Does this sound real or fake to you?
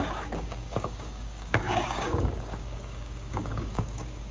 fake